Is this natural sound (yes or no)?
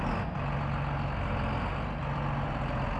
yes